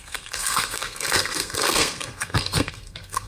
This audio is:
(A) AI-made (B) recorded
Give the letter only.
A